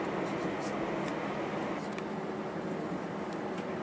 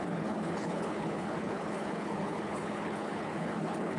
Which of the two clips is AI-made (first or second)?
second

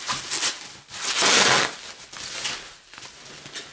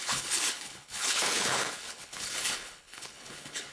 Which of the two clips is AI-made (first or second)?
second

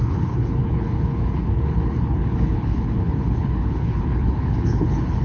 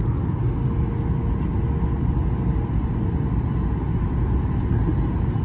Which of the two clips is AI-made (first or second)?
first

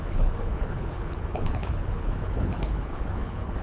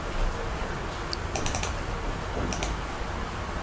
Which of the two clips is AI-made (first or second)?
first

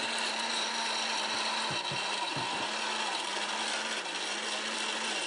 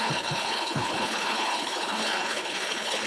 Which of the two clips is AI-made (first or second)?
second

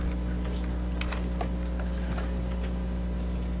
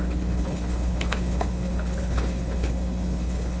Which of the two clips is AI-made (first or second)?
second